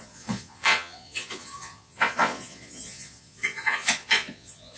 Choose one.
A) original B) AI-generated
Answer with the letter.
B